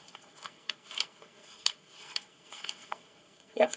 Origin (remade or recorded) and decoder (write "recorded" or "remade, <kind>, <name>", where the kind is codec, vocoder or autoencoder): remade, codec, SNAC